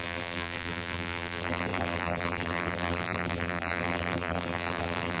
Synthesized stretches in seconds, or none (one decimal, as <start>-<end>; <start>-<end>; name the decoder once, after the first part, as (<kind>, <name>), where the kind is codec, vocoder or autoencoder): 0.0-5.2 (vocoder, BigVGAN v2)